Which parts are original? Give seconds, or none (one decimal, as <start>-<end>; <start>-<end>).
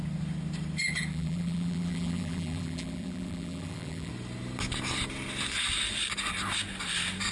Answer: 0.0-1.1; 4.1-7.3